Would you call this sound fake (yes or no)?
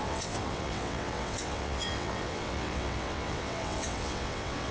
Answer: yes